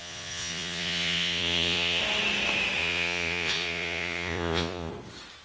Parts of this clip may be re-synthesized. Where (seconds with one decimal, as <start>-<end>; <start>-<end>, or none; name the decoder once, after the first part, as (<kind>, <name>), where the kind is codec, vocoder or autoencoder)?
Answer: 0.0-2.0 (vocoder, Vocos); 2.8-4.9